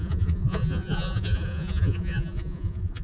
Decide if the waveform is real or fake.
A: fake